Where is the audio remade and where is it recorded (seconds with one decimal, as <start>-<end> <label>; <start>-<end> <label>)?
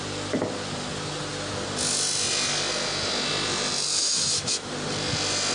0.0-4.0 recorded; 4.0-4.7 remade; 4.7-5.5 recorded